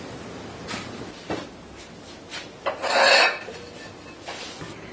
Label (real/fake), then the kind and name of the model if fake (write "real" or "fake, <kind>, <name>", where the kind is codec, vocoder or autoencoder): real